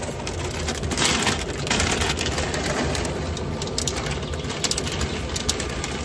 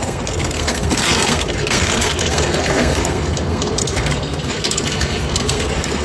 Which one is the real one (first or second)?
first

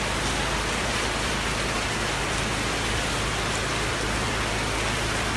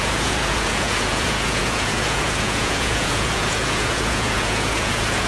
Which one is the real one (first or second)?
first